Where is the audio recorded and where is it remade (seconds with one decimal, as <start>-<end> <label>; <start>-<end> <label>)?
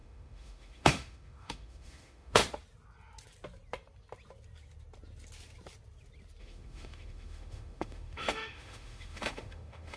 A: 0.0-2.4 remade; 2.4-6.4 recorded; 6.4-10.0 remade